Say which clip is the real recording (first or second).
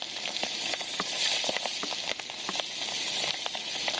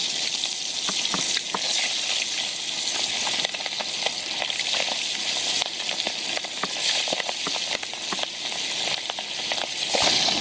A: second